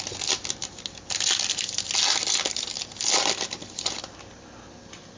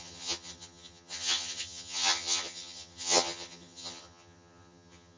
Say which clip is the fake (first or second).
second